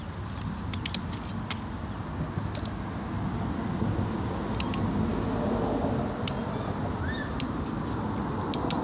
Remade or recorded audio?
recorded